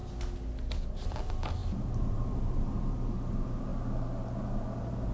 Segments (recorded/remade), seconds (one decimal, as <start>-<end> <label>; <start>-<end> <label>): 0.0-0.9 recorded; 0.9-3.7 remade; 3.7-4.4 recorded; 4.4-5.1 remade